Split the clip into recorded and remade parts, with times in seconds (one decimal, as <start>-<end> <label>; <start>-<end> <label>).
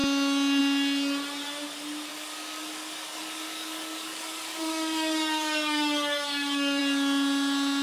0.0-2.1 recorded; 2.1-6.8 remade; 6.8-7.8 recorded